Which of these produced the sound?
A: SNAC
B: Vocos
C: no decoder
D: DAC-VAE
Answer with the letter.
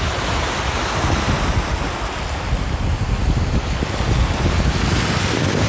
C